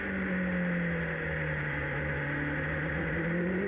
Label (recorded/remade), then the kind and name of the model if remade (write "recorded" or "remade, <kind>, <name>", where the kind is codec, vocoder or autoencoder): recorded